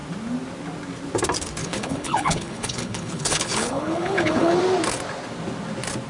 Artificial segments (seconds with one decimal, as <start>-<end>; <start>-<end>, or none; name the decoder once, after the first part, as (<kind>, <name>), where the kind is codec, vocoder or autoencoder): 1.6-4.6 (codec, HILCodec)

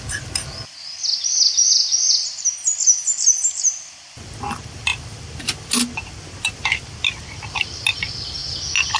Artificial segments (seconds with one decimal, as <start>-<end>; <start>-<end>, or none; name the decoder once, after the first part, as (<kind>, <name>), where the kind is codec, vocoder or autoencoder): none

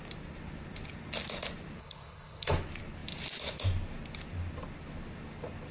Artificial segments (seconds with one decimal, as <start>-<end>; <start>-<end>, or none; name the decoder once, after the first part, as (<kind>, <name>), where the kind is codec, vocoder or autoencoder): 1.8-2.5 (codec, HILCodec)

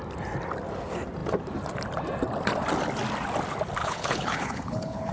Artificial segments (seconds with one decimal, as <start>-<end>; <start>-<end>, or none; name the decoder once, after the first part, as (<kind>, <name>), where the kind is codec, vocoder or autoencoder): 3.8-5.1 (codec, HILCodec)

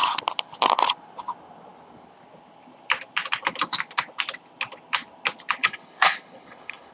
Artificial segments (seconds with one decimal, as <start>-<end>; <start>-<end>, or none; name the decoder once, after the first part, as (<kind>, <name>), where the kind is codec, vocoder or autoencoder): 5.6-6.9 (codec, HILCodec)

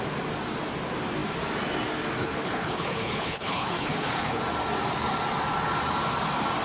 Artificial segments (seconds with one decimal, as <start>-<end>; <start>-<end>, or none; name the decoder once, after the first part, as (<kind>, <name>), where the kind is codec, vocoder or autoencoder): 2.2-4.4 (codec, HILCodec)

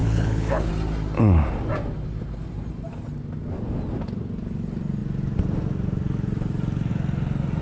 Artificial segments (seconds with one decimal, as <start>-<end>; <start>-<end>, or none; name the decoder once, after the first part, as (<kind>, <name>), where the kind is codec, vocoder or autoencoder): 0.0-0.7 (codec, HILCodec)

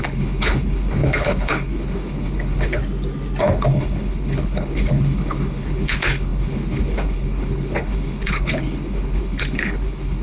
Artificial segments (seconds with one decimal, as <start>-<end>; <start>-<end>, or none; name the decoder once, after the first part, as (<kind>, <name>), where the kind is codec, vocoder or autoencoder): 0.0-2.8 (codec, HILCodec); 3.4-10.2